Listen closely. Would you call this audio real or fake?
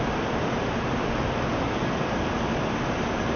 real